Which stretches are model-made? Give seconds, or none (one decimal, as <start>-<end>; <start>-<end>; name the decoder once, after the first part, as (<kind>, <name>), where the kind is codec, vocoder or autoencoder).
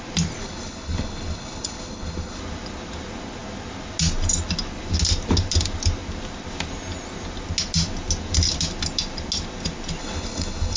0.4-2.4 (codec, HILCodec); 10.0-10.8